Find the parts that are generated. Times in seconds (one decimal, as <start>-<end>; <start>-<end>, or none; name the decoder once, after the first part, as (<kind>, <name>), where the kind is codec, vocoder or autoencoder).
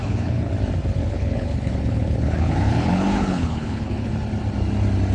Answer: 0.0-0.5 (codec, HILCodec); 1.0-4.1